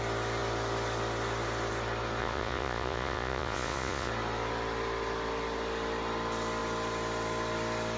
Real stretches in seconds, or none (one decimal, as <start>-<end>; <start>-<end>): 0.0-2.2; 4.1-8.0